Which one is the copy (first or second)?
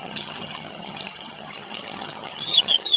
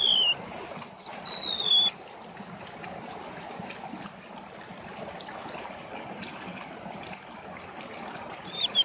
first